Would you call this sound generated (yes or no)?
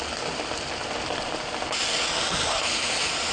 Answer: no